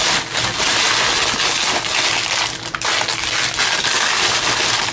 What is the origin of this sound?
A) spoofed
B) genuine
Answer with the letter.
B